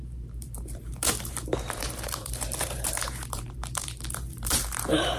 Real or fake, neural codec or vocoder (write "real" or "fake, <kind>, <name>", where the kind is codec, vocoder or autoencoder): fake, vocoder, BigVGAN v2